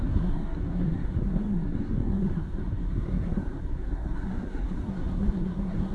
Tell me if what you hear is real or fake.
fake